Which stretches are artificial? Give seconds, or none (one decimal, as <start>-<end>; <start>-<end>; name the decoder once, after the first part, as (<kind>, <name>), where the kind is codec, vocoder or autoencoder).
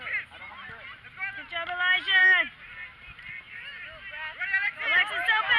none